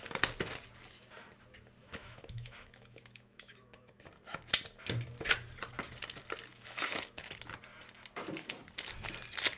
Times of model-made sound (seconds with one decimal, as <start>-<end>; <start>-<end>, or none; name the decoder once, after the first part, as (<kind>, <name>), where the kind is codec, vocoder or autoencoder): 1.8-4.0 (autoencoder, DAC-VAE); 6.5-7.3